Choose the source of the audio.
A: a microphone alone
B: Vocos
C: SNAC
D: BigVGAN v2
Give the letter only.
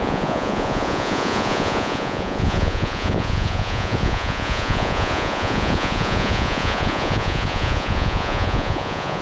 B